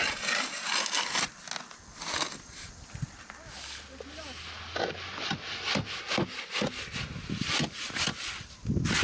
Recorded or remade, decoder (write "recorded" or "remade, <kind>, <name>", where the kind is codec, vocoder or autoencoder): recorded